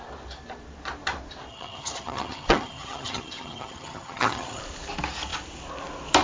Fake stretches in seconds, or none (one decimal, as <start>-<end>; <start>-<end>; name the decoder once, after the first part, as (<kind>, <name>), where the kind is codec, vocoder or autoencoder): 1.5-4.6 (vocoder, HiFi-GAN)